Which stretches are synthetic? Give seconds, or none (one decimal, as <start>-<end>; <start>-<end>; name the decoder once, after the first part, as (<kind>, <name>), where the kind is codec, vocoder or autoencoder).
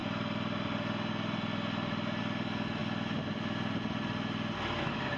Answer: none